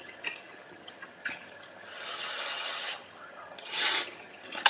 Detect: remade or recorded remade